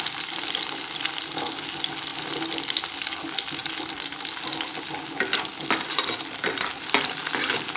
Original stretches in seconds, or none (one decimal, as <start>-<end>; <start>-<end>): 0.0-7.8